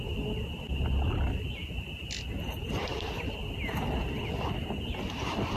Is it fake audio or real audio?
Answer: real